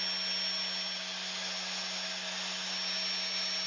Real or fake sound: real